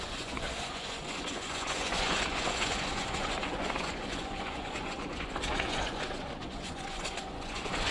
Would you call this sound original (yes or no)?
no